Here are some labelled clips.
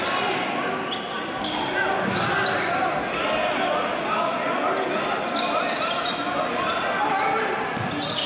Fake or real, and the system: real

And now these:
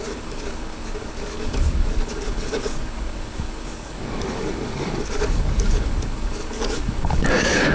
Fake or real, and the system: fake, codec, DAC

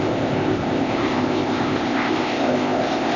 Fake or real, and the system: fake, codec, ZipCodec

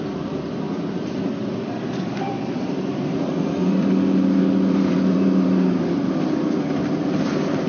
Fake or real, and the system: fake, vocoder, BigVGAN v2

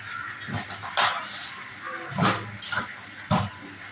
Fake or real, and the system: real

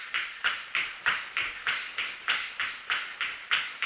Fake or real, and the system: real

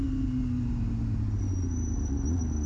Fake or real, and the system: real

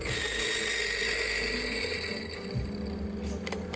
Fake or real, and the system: real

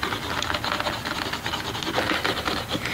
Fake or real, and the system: real